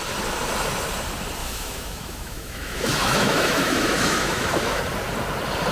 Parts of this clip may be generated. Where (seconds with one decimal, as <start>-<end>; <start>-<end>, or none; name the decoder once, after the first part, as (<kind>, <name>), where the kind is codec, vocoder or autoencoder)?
1.4-4.8 (autoencoder, DAC-VAE)